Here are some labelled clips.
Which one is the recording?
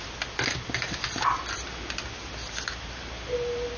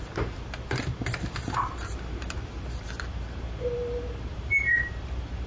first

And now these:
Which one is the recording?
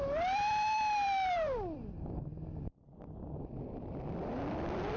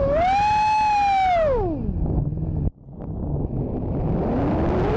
second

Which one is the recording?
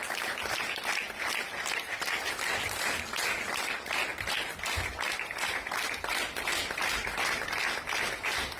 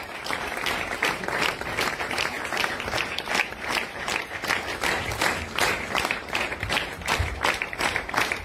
first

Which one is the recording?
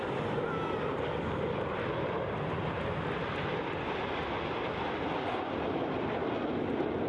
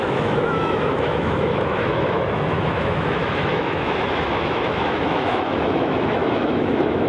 first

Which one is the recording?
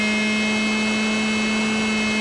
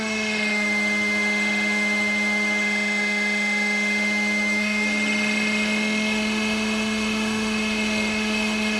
first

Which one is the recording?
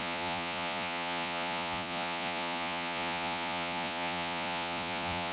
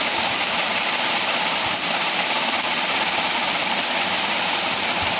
second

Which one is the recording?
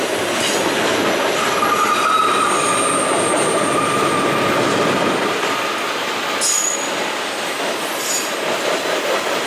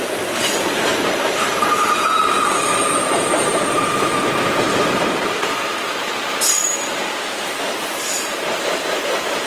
first